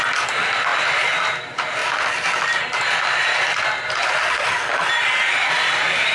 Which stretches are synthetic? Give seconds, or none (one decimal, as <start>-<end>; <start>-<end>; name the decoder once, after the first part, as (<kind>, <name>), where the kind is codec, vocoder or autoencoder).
none